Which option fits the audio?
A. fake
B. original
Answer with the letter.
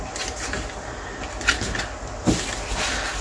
B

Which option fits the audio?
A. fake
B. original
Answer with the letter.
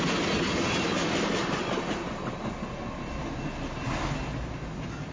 B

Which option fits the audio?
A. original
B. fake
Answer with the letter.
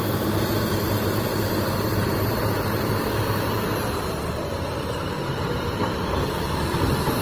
B